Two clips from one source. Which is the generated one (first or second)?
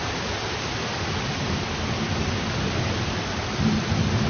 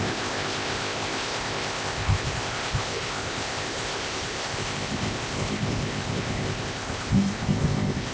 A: second